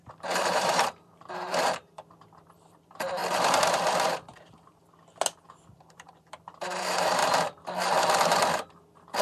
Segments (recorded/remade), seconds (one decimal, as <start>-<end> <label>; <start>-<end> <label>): 0.0-3.2 remade; 3.2-5.8 recorded; 5.8-7.2 remade; 7.2-9.2 recorded

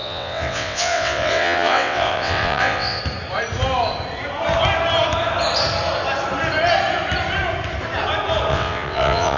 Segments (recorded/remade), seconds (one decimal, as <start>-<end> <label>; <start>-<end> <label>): 0.0-3.0 remade; 3.0-8.5 recorded; 8.5-9.4 remade